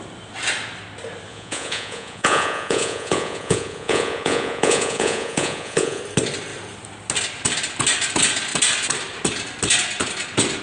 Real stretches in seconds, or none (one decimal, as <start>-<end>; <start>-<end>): 0.0-1.3; 6.0-10.6